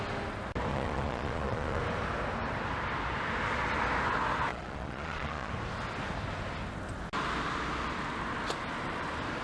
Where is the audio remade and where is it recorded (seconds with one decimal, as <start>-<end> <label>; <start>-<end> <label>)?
0.0-0.7 recorded; 0.7-1.8 remade; 1.8-4.5 recorded; 4.5-5.5 remade; 5.5-9.4 recorded